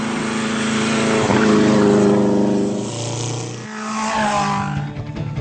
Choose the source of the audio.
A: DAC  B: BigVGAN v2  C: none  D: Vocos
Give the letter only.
C